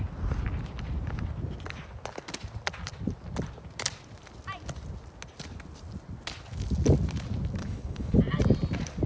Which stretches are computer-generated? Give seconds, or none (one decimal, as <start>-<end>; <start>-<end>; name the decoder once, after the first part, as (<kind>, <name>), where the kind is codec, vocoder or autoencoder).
7.6-8.2 (codec, HILCodec)